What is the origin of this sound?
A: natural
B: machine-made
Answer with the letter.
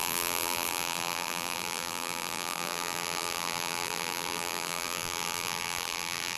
B